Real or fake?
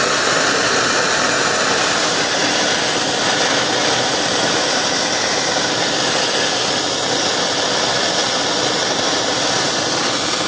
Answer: real